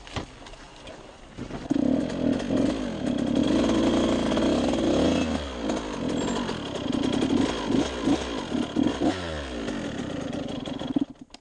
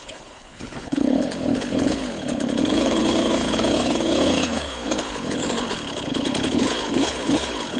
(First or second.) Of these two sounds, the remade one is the second